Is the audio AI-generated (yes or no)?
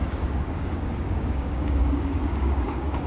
yes